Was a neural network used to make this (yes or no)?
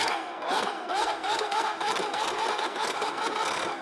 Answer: yes